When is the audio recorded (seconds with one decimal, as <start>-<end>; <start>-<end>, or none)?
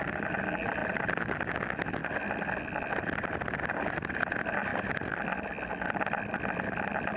0.0-7.2